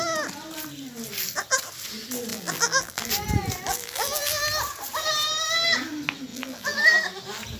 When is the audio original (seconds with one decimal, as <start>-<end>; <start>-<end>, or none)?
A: 0.0-2.3; 3.1-3.7; 4.4-6.3; 6.8-7.6